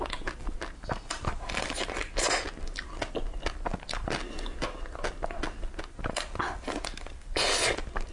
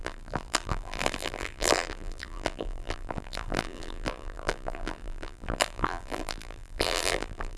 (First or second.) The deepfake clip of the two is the second